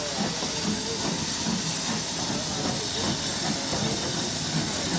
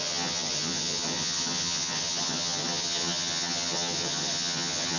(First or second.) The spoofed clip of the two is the second